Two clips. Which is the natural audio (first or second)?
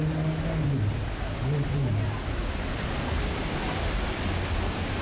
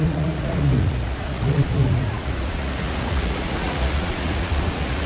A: first